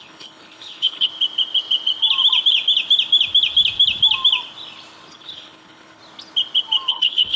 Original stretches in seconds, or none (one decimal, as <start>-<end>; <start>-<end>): 1.1-5.1; 6.0-6.9